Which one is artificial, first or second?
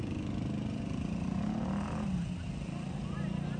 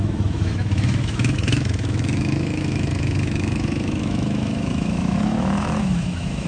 second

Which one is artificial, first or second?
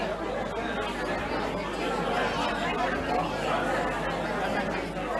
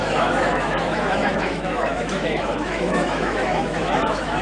second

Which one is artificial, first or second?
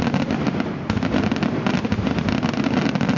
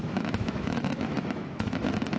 second